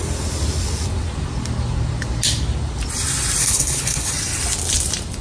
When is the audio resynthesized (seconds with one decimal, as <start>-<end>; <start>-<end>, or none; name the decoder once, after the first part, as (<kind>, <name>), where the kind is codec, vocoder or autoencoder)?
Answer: 3.4-4.1 (codec, HILCodec)